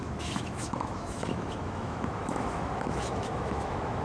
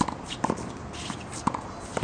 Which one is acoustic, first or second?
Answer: second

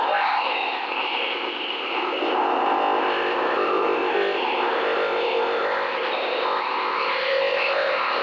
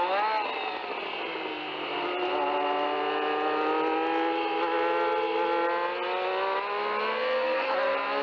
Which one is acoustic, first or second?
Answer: second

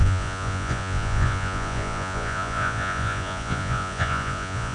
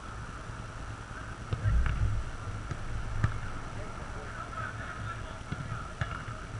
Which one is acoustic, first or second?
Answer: second